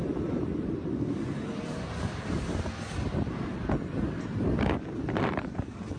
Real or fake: fake